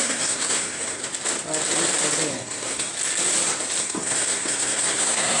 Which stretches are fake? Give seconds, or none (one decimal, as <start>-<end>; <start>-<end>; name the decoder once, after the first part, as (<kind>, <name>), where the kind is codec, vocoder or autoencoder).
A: 0.0-1.0 (codec, SNAC); 2.3-2.9; 3.8-5.4